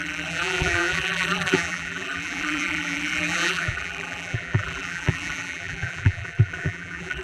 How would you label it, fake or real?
fake